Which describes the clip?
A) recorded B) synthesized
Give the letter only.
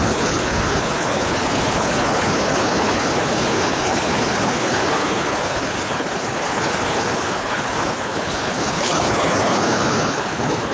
B